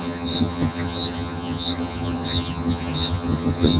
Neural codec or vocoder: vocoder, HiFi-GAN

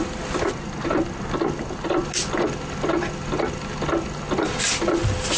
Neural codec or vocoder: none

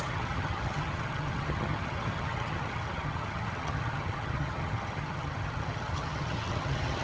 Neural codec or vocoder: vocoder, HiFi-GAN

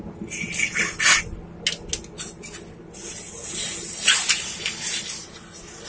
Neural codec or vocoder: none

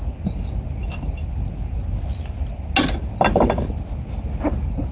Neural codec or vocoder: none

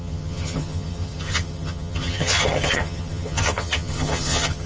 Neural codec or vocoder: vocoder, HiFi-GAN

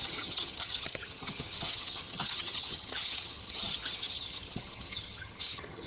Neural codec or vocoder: vocoder, HiFi-GAN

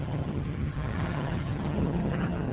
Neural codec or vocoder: vocoder, HiFi-GAN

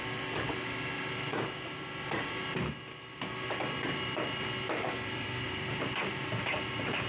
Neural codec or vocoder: none